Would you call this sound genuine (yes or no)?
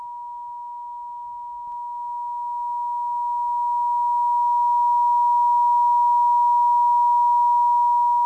yes